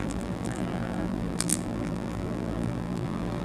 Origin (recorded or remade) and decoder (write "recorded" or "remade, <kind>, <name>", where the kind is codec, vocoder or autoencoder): remade, vocoder, BigVGAN v2